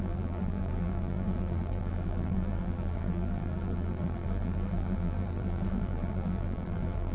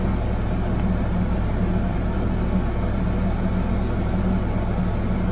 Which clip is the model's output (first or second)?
first